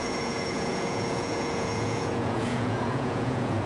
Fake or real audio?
fake